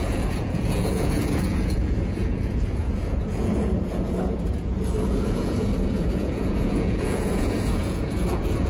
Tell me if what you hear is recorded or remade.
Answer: remade